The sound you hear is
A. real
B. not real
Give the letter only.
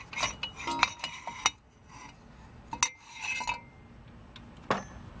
A